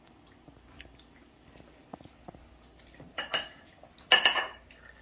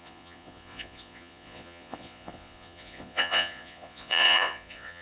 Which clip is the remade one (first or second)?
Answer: second